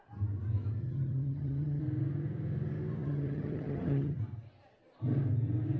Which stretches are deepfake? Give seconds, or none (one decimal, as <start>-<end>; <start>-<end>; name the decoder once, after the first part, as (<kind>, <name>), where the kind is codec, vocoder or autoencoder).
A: 0.8-1.8 (vocoder, HiFi-GAN); 3.0-4.2